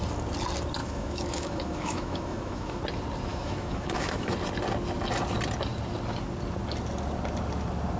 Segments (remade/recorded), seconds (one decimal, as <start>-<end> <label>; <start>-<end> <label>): 0.0-0.8 recorded; 0.8-2.8 remade; 2.8-3.3 recorded; 3.3-4.3 remade; 4.3-8.0 recorded